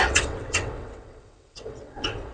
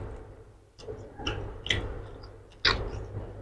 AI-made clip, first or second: first